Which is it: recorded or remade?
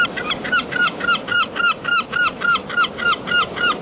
remade